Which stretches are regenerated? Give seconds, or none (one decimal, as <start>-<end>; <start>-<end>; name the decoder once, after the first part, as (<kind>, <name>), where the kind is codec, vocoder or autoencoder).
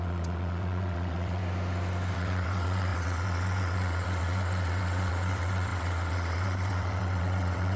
0.0-1.4 (vocoder, WaveNeXt); 2.1-7.8